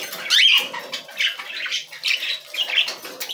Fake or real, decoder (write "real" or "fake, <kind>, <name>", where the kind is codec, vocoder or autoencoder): real